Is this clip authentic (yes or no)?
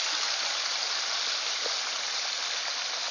yes